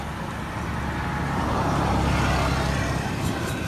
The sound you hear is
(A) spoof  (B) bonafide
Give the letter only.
B